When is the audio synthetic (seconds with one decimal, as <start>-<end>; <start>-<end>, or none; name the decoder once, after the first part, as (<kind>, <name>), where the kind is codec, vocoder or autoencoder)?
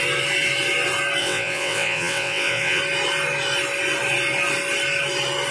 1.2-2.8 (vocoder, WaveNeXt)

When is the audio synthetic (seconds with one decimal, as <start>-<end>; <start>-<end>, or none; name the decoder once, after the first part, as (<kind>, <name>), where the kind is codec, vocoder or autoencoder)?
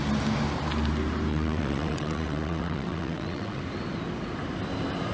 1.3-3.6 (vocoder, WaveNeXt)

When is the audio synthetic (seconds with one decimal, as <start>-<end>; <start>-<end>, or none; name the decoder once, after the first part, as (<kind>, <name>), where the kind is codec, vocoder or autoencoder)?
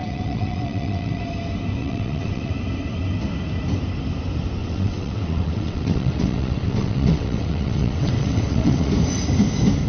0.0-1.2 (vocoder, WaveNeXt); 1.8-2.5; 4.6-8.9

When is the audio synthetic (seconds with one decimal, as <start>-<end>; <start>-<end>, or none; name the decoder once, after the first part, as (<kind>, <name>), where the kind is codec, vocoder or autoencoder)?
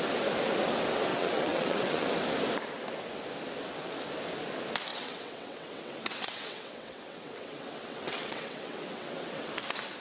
1.1-2.1 (vocoder, WaveNeXt); 4.9-9.5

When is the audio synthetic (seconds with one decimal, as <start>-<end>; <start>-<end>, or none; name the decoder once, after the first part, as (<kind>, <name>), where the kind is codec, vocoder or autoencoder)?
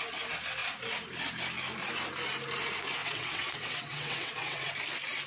3.0-4.7 (vocoder, WaveNeXt)